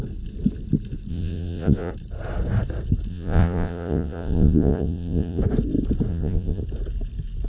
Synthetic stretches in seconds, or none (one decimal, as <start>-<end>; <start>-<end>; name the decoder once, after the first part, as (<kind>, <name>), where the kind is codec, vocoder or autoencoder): 1.1-1.9 (vocoder, Vocos); 3.1-5.4; 6.1-6.6